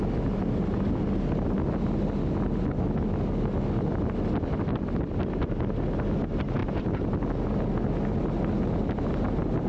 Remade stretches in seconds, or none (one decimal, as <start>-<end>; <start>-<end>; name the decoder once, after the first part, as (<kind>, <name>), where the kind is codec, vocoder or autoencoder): none